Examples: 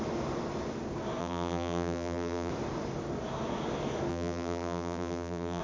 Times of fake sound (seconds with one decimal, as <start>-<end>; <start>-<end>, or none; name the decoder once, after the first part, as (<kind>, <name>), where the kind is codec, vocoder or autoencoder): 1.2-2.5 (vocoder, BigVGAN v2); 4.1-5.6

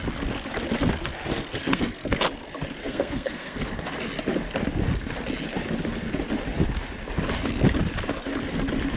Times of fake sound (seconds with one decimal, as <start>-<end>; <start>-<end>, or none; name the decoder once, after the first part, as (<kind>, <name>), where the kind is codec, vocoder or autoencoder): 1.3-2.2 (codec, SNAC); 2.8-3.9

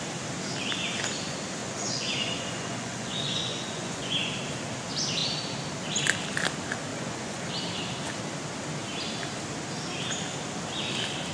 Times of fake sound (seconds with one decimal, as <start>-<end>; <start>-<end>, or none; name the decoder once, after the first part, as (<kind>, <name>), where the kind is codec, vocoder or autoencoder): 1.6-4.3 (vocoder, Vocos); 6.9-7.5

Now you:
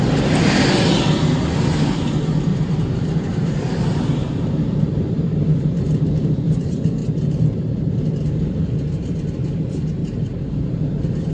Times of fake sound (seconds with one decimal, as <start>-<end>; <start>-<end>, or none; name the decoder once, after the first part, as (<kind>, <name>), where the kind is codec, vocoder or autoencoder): 2.5-6.6 (vocoder, BigVGAN v2); 7.0-8.2; 10.0-11.3

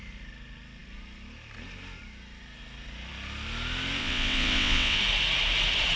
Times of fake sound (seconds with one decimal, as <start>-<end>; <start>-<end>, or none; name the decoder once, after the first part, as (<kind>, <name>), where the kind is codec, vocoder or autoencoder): 4.0-5.0 (vocoder, WaveNeXt)

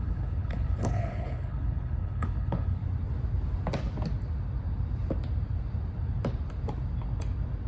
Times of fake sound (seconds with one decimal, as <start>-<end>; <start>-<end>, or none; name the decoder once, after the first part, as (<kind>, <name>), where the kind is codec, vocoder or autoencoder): 0.0-2.8 (codec, HILCodec)

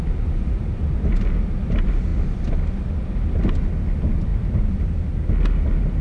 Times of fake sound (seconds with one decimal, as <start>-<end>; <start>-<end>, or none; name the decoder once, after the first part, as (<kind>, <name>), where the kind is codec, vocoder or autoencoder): 0.4-1.4 (vocoder, BigVGAN v2); 4.3-5.3